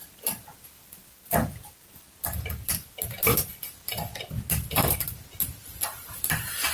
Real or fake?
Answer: real